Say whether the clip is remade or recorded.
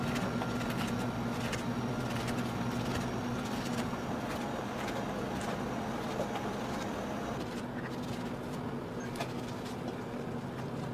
recorded